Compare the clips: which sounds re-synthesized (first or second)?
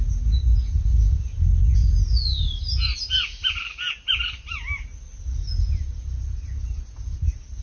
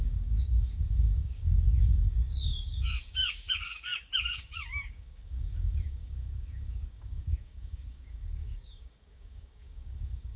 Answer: second